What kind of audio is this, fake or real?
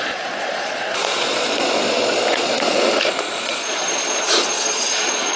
fake